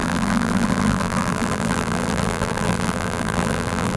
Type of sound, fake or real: fake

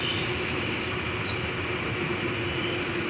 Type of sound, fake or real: real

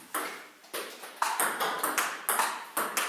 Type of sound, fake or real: real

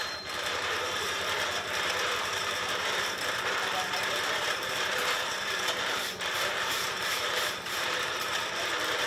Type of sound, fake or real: fake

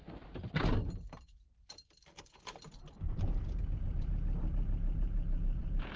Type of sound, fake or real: fake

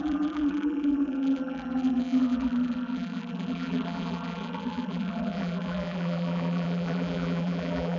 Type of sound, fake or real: fake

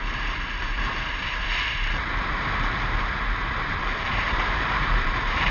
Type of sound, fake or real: fake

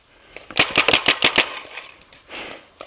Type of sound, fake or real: real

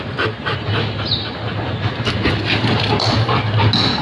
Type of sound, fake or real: real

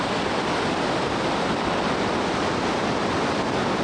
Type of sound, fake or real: real